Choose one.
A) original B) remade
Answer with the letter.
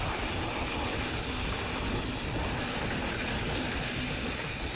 A